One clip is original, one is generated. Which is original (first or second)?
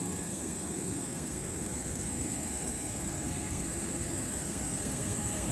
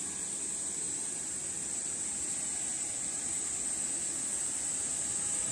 second